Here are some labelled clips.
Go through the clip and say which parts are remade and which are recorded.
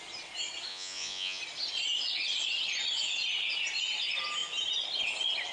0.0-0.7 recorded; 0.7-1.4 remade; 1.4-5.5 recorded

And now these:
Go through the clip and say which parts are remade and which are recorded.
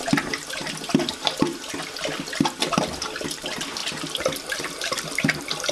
0.0-5.7 recorded